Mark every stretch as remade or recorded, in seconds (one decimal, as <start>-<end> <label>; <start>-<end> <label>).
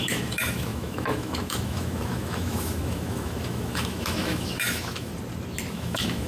0.0-5.1 remade; 5.1-5.7 recorded; 5.7-6.3 remade